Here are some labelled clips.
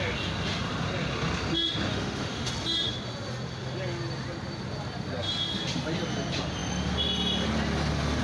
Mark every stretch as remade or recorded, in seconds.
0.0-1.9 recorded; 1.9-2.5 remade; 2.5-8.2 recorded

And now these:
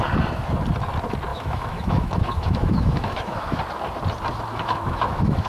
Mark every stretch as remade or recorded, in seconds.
0.0-1.3 recorded; 1.3-3.6 remade; 3.6-4.5 recorded; 4.5-5.5 remade

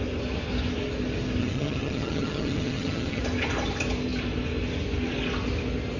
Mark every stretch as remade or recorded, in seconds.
0.0-1.4 recorded; 1.4-3.2 remade; 3.2-6.0 recorded

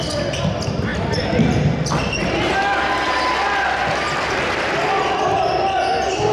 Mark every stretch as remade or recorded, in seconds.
0.0-6.3 recorded

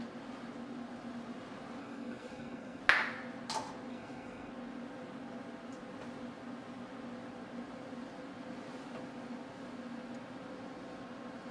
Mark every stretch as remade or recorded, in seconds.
0.0-1.8 recorded; 1.8-2.8 remade; 2.8-3.9 recorded; 3.9-4.5 remade; 4.5-11.5 recorded

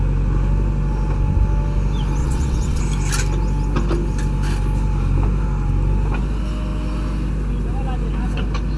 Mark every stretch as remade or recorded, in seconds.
0.0-2.2 recorded; 2.2-2.8 remade; 2.8-8.8 recorded